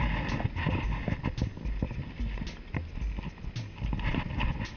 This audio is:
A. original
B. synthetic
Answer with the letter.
A